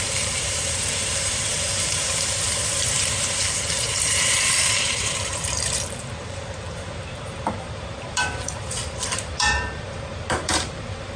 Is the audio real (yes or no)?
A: no